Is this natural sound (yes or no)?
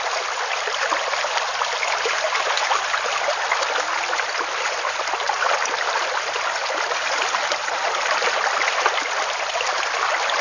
yes